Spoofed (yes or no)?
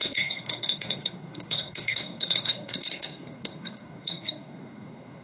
yes